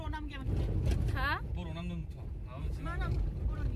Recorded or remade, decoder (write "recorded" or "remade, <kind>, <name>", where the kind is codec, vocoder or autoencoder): recorded